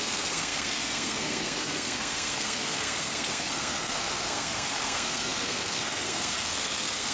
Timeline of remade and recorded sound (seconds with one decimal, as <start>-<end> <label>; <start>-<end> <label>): 0.0-7.1 remade